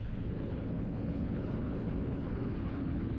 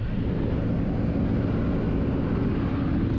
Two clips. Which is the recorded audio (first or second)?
second